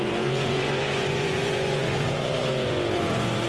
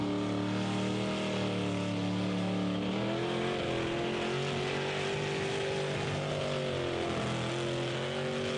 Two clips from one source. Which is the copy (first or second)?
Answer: first